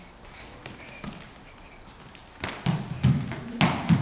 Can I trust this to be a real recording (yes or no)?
yes